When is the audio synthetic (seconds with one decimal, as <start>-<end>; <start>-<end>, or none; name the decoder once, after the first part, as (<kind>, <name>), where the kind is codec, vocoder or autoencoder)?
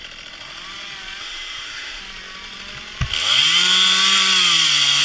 1.2-2.0 (autoencoder, DAC-VAE)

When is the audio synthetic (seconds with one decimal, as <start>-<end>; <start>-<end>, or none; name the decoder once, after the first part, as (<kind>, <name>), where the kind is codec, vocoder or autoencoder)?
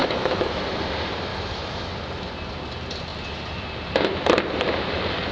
0.0-0.6 (autoencoder, DAC-VAE); 1.3-1.9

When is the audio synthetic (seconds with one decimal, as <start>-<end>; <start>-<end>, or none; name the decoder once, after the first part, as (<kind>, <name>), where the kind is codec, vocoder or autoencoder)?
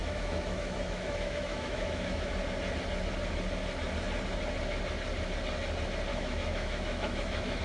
0.0-2.3 (autoencoder, DAC-VAE); 6.1-7.6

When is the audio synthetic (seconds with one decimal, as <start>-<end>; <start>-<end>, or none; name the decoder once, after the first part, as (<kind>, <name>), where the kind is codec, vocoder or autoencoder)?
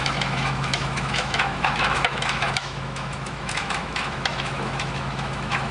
0.0-5.7 (autoencoder, DAC-VAE)